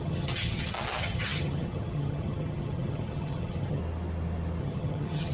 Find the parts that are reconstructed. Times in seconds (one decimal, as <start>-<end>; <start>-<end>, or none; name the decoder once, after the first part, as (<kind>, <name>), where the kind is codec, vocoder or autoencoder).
0.0-3.8 (vocoder, HiFi-GAN); 4.6-5.3